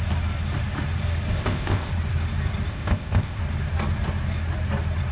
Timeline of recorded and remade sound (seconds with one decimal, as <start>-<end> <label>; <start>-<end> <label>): 0.0-1.3 recorded; 1.3-1.9 remade; 1.9-2.7 recorded; 2.7-3.4 remade; 3.4-5.1 recorded